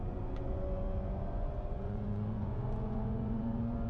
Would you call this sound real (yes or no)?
no